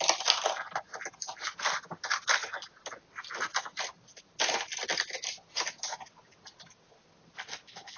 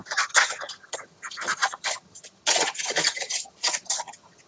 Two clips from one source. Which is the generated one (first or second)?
second